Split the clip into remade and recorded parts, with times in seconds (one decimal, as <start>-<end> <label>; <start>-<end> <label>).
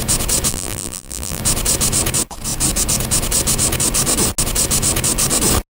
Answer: 0.0-0.5 recorded; 0.5-1.4 remade; 1.4-5.8 recorded